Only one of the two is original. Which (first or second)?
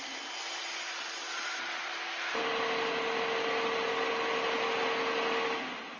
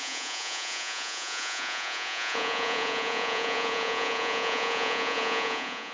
first